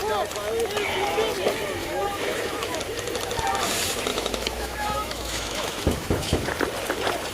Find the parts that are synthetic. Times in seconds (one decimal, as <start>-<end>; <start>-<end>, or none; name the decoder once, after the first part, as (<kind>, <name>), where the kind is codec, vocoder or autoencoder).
1.8-2.8 (autoencoder, DAC-VAE); 4.1-6.5